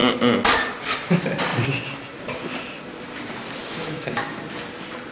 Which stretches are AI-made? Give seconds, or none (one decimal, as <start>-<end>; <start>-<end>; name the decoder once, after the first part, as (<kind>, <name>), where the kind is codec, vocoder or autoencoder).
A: 3.6-4.4 (autoencoder, DAC-VAE)